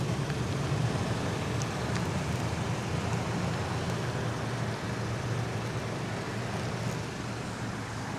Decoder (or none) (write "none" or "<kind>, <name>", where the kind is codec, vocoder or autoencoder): none